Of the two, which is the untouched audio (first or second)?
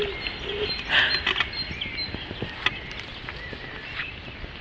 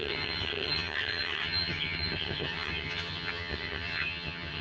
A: first